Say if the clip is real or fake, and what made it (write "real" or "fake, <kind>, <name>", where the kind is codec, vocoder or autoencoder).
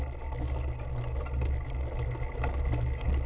real